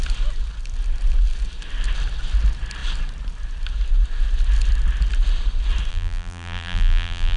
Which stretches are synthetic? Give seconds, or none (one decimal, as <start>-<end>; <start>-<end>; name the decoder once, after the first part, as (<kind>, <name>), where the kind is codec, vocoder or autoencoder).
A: 5.9-7.4 (vocoder, BigVGAN v2)